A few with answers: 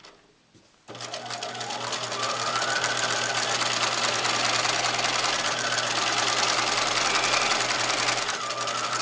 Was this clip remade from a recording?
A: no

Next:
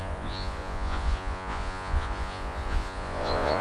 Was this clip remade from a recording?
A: yes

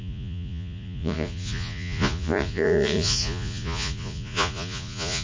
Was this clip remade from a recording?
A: yes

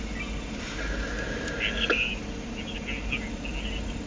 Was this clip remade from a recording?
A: no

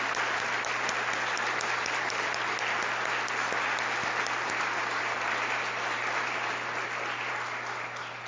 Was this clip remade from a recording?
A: no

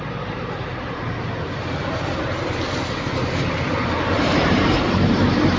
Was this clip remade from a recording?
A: yes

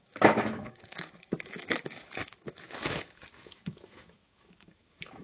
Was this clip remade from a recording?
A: yes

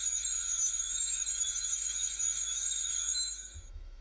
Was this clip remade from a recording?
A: yes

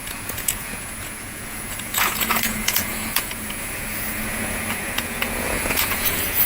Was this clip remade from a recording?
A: yes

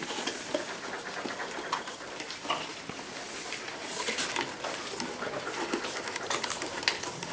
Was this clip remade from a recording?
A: no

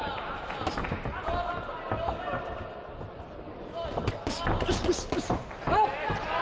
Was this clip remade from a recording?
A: no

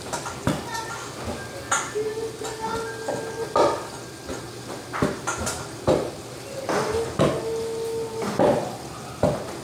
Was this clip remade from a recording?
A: no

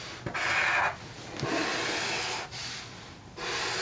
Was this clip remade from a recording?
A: no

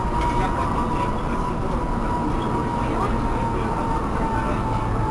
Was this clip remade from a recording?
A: no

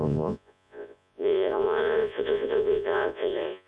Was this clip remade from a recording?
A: yes